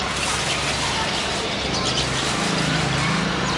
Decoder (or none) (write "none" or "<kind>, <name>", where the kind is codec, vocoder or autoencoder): none